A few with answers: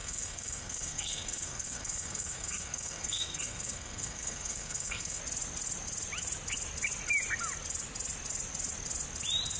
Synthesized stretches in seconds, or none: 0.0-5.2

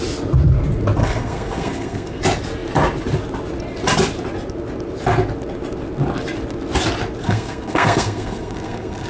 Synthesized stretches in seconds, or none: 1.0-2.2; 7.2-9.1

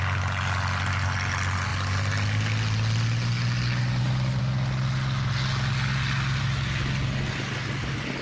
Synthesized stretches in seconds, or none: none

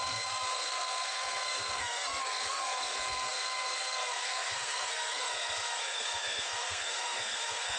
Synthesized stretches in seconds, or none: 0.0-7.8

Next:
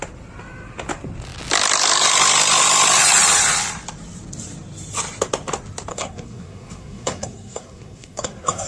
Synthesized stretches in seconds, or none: 5.9-8.7

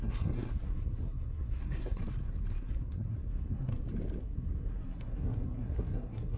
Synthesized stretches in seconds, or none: 0.0-2.0; 2.6-3.7; 4.2-6.4